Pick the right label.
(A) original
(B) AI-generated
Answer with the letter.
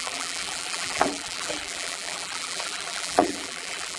B